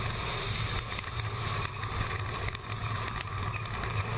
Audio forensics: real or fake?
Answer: real